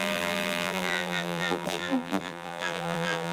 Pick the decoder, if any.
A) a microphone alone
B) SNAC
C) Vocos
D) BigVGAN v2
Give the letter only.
D